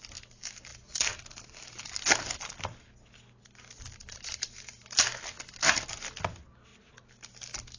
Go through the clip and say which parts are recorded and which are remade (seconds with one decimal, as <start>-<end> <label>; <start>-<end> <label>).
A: 0.0-7.8 recorded

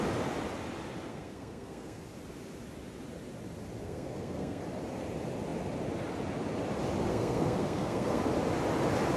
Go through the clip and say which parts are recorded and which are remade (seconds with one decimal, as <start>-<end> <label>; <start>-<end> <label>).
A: 0.0-1.1 recorded; 1.1-2.0 remade; 2.0-3.8 recorded; 3.8-4.6 remade; 4.6-7.1 recorded; 7.1-8.2 remade; 8.2-9.2 recorded